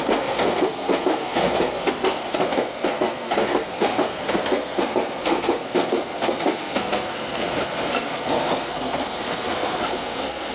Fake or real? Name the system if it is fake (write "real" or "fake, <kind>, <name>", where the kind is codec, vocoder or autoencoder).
fake, codec, SNAC